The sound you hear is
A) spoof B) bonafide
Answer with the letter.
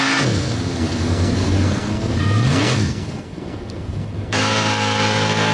A